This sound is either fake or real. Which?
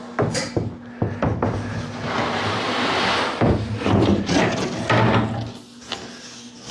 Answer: real